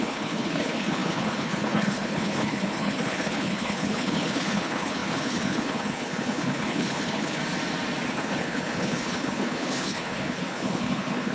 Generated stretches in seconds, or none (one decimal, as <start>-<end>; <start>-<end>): 0.0-7.4; 8.1-11.3